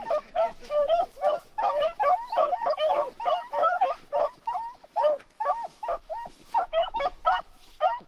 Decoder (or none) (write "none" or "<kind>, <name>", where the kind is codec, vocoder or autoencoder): autoencoder, DAC-VAE